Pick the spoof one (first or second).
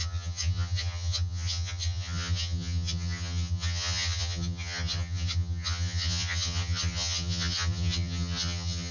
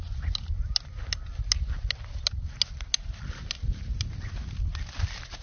first